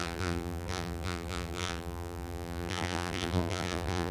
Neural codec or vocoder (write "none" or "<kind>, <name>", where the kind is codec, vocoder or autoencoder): vocoder, BigVGAN v2